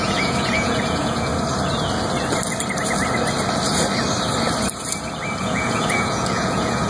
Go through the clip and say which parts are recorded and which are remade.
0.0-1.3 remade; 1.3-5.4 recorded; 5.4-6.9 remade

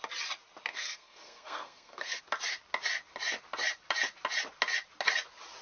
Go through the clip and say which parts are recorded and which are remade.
0.0-0.7 recorded; 0.7-2.2 remade; 2.2-5.6 recorded

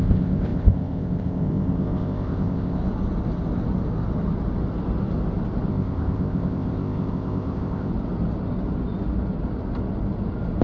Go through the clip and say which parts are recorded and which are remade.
0.0-2.8 remade; 2.8-5.7 recorded; 5.7-7.9 remade; 7.9-10.6 recorded

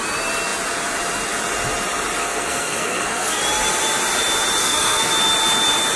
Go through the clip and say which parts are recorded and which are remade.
0.0-2.2 recorded; 2.2-3.4 remade; 3.4-4.6 recorded; 4.6-5.1 remade; 5.1-6.0 recorded

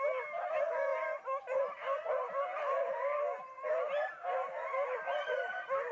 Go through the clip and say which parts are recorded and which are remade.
0.0-5.9 recorded

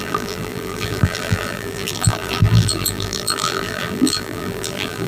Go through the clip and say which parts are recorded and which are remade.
0.0-5.1 remade